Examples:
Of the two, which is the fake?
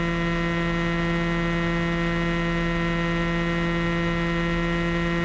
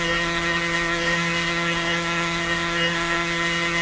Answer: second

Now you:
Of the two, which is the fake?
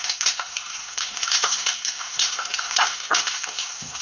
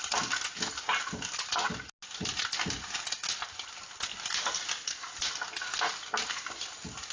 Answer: first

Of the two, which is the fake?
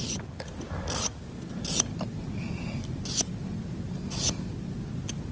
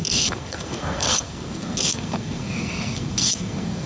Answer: second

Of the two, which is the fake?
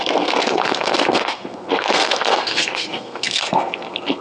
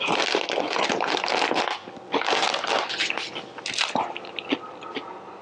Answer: first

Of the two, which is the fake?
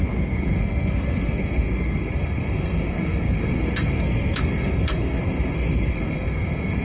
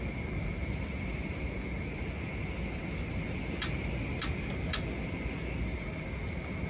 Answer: first